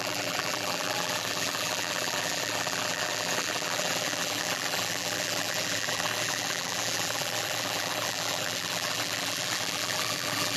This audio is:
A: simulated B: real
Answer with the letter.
A